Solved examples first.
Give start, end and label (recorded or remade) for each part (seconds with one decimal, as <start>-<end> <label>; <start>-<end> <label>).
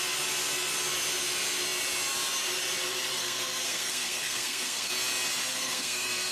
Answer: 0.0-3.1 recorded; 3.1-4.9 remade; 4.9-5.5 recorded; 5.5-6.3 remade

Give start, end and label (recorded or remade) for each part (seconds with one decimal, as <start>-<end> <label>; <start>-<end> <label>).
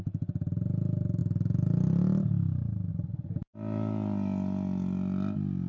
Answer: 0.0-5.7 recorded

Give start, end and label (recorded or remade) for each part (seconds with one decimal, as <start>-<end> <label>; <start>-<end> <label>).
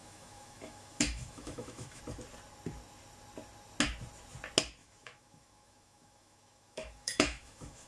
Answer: 0.0-2.0 remade; 2.0-4.8 recorded; 4.8-7.9 remade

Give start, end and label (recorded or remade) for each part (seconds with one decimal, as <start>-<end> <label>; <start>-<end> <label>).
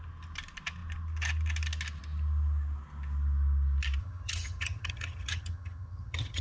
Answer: 0.0-4.0 recorded; 4.0-6.4 remade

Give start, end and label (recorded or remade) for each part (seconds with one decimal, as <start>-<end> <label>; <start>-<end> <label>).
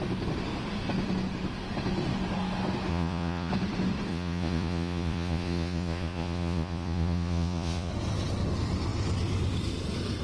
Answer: 0.0-2.9 recorded; 2.9-3.5 remade; 3.5-4.1 recorded; 4.1-7.9 remade; 7.9-10.2 recorded